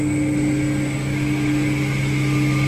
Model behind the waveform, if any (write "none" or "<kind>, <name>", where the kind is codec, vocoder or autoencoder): none